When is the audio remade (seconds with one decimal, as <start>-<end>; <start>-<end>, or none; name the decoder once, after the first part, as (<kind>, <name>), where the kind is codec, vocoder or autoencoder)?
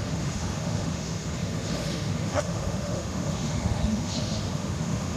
0.0-5.2 (autoencoder, DAC-VAE)